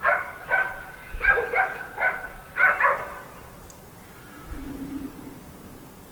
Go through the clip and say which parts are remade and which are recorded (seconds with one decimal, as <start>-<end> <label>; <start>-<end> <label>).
0.0-6.1 recorded